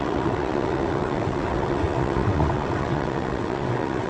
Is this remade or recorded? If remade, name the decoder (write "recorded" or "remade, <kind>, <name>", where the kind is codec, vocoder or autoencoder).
remade, vocoder, WaveNeXt